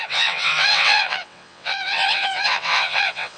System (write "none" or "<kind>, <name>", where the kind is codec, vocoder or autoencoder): vocoder, WaveNeXt